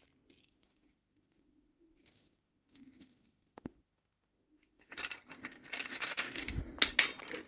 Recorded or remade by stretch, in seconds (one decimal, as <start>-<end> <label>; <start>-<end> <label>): 0.0-0.4 recorded; 0.4-4.9 remade; 4.9-5.9 recorded; 5.9-6.6 remade; 6.6-7.5 recorded